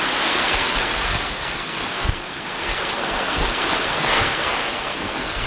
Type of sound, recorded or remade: remade